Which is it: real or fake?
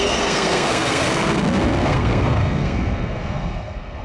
fake